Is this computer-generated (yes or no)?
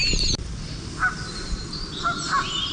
no